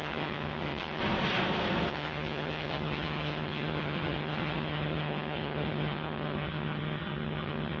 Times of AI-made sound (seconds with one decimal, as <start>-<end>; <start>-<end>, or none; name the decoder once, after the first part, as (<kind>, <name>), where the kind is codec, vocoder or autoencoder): 0.0-1.0 (vocoder, HiFi-GAN); 1.9-7.8